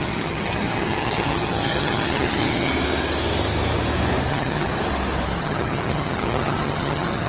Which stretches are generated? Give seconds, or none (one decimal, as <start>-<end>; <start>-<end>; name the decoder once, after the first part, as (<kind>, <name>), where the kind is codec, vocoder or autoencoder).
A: 0.0-2.7 (vocoder, HiFi-GAN); 4.3-4.7; 5.4-7.3